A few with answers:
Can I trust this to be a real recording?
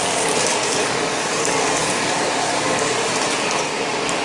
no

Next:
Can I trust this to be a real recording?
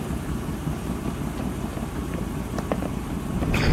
no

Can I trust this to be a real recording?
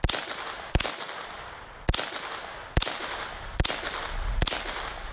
yes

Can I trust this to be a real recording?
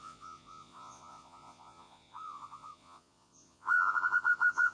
no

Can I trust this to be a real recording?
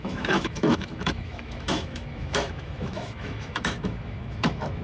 no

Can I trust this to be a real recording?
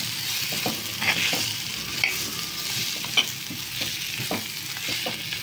yes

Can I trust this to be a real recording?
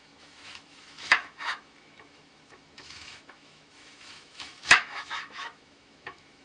no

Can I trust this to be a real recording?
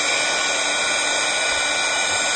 yes